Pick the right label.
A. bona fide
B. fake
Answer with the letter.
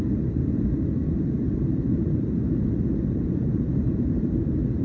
B